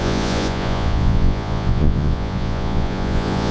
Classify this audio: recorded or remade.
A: remade